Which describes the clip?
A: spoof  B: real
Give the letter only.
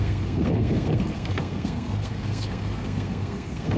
A